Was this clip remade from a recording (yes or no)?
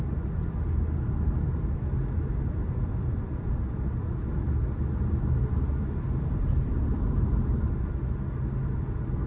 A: no